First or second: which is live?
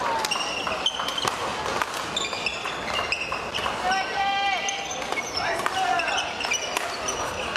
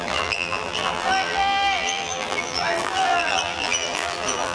first